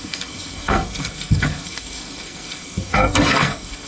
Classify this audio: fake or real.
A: fake